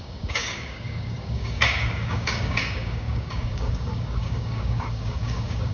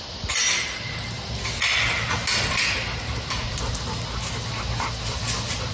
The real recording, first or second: second